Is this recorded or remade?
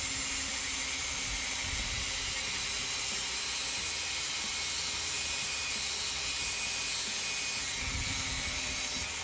recorded